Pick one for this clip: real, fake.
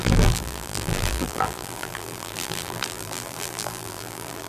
fake